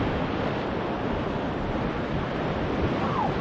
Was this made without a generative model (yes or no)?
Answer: yes